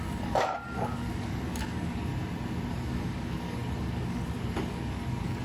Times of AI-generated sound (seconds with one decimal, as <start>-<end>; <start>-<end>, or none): 0.0-2.1; 2.7-5.4